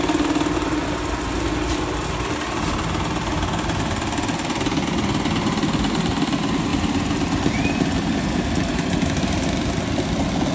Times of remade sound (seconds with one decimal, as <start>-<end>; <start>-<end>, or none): none